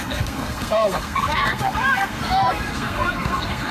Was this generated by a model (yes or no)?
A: yes